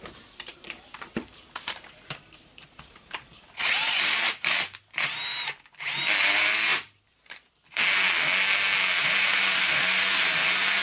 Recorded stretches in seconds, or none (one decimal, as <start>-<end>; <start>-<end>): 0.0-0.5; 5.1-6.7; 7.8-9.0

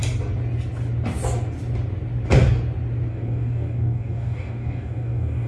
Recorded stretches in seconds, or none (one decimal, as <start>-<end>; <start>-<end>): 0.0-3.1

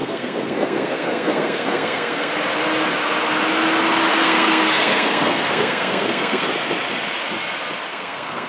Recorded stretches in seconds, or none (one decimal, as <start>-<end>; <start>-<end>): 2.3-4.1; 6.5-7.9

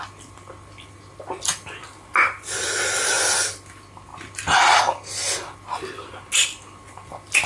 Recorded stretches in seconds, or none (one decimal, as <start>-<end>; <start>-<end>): 0.0-7.5

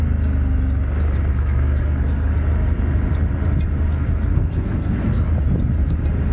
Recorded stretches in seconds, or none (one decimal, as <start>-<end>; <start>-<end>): 0.0-1.3; 2.3-3.9; 5.2-6.3

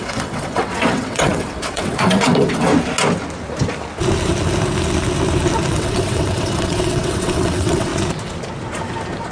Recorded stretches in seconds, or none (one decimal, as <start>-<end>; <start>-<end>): 2.7-5.7; 7.9-9.3

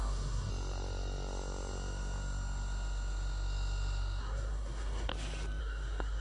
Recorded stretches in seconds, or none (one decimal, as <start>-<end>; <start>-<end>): 0.5-4.2; 5.1-5.6